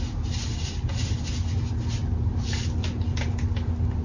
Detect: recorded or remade recorded